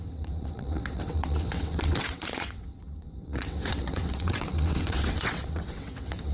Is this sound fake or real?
fake